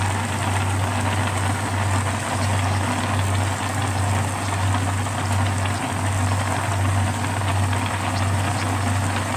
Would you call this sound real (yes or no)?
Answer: yes